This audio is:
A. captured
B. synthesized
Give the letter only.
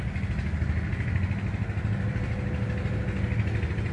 A